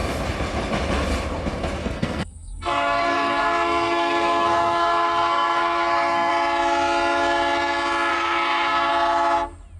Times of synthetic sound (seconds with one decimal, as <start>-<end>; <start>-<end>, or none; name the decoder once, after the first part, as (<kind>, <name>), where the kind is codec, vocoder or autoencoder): 1.8-6.3 (codec, SNAC); 8.1-8.9